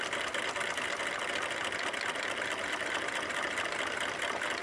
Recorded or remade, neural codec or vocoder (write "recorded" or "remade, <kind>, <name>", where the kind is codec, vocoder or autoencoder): recorded